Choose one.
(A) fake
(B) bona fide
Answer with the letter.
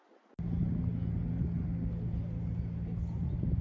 B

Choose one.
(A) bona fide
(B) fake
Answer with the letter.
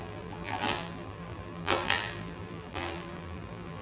B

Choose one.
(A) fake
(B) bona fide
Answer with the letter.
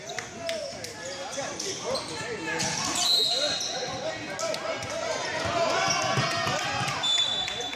B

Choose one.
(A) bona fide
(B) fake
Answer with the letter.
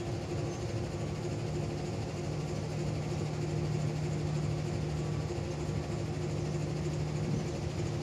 A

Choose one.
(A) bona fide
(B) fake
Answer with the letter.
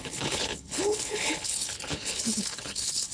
B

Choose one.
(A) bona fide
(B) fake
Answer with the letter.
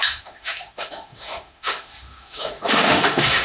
B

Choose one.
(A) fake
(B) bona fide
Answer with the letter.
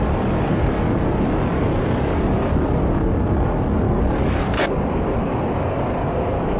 B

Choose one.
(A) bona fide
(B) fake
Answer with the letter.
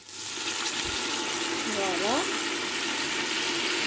A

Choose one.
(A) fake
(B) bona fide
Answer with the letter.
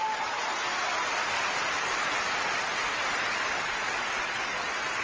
B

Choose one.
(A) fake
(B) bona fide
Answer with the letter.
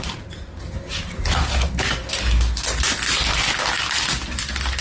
B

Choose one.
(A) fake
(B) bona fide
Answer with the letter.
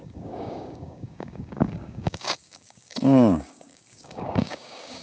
A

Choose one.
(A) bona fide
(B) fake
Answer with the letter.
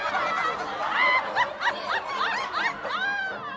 A